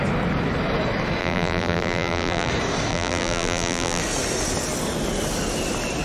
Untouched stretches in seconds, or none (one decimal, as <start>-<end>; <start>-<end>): 0.0-1.2; 2.5-2.9; 4.0-6.0